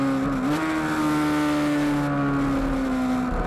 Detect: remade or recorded recorded